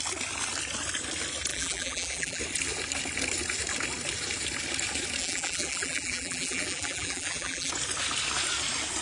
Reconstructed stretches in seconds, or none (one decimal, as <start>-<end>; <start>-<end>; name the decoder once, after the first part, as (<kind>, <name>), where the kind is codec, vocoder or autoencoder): 1.5-2.4 (vocoder, BigVGAN v2); 5.2-7.7